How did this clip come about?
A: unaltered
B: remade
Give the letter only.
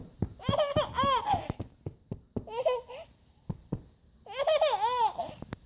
A